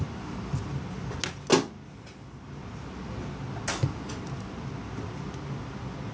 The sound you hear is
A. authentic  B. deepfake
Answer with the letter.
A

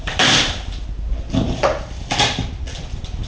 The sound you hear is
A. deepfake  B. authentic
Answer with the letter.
A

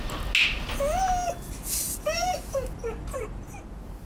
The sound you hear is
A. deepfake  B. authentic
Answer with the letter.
B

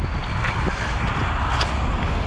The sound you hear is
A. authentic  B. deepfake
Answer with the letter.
A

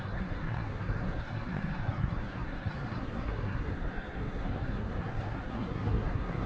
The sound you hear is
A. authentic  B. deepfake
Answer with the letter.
B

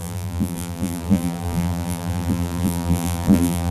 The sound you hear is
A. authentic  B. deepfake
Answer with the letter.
B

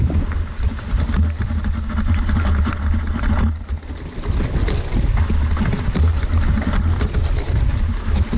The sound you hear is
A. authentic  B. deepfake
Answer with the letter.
A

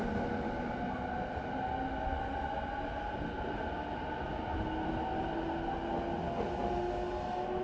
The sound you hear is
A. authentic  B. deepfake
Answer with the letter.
A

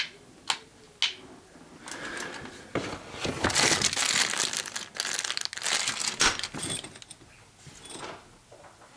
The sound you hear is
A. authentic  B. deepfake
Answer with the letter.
A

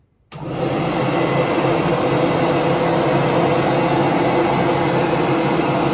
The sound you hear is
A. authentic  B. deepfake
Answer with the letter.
A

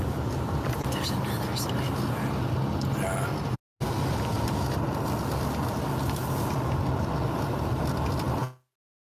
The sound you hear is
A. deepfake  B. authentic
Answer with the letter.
B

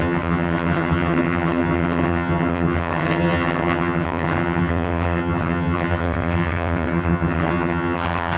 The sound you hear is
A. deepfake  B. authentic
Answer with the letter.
A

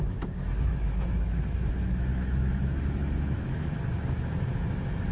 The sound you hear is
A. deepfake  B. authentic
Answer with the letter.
A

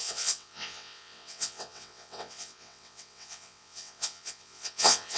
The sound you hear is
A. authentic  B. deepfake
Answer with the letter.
B